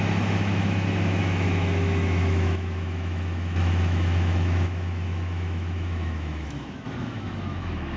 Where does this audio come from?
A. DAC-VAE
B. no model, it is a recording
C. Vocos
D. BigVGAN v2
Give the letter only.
A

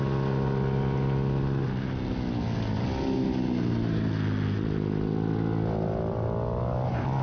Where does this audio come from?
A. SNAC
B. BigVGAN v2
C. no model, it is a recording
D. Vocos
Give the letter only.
C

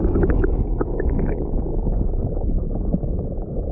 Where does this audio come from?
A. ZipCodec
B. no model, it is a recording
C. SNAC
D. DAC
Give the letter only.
D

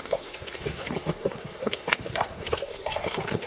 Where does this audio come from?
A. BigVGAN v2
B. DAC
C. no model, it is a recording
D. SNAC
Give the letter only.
D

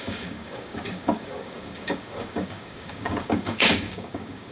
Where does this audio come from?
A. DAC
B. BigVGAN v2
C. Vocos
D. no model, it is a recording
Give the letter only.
A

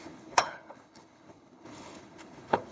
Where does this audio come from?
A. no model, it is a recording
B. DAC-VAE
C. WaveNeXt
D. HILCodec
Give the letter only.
D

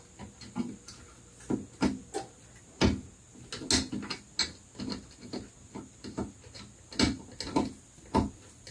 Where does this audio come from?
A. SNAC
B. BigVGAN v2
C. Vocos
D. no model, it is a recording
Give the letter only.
D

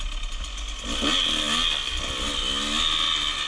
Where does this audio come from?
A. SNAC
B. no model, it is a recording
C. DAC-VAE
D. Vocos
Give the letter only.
B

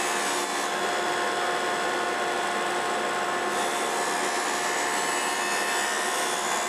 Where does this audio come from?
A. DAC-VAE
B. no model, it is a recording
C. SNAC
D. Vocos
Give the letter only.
B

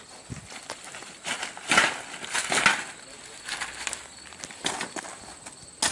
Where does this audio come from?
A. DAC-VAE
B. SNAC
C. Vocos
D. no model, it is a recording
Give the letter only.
D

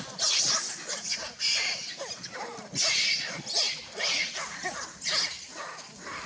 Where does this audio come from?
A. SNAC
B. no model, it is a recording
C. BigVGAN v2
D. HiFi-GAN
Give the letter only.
B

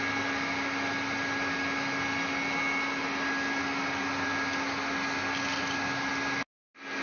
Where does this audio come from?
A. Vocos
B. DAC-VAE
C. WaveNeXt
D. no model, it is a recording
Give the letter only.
D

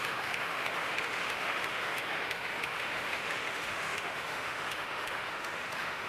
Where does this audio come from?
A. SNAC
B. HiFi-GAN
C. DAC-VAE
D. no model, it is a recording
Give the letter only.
C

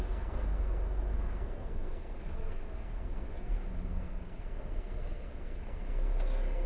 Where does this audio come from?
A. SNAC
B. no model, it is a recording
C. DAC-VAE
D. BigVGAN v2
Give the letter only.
A